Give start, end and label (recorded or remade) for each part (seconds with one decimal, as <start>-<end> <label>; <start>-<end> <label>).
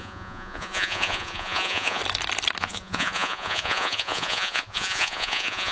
0.0-2.0 remade; 2.0-2.6 recorded; 2.6-5.7 remade